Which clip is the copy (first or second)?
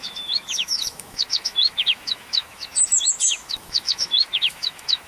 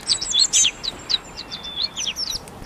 first